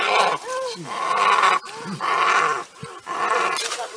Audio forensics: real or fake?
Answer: real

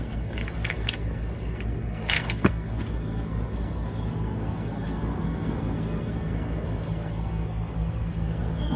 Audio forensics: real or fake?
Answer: fake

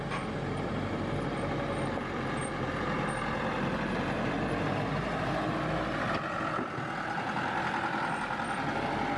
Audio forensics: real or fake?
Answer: real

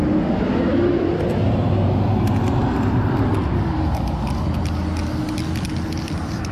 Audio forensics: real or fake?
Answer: real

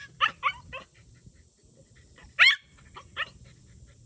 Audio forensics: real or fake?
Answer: real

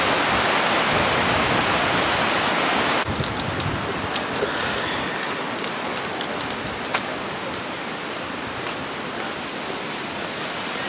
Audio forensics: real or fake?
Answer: real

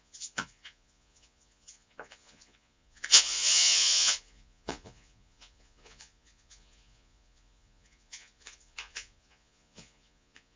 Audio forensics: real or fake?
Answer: fake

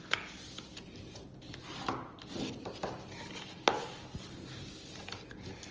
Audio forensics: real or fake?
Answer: real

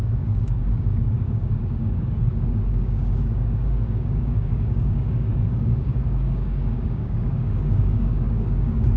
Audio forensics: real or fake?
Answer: fake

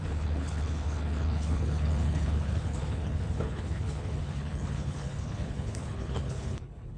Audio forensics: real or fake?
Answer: fake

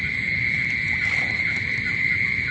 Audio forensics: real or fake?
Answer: real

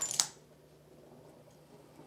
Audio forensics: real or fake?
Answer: real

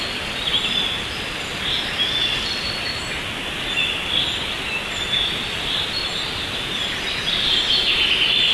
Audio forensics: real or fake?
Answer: real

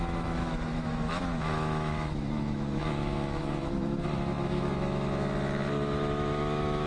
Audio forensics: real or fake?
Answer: fake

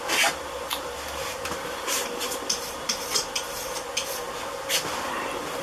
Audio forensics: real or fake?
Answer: real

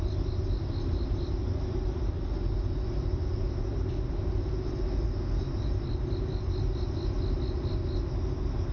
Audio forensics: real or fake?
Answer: real